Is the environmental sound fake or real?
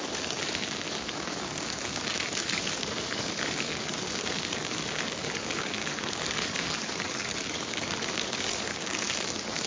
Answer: fake